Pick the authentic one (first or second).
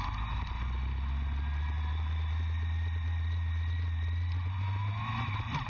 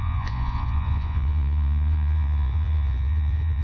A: first